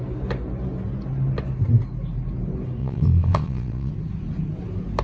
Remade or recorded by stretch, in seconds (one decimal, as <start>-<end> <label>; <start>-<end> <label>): 0.0-2.8 recorded; 2.8-3.9 remade; 3.9-5.0 recorded